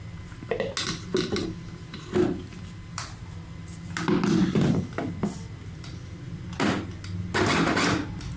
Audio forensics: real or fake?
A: real